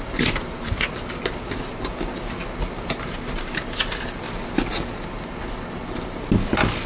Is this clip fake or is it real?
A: real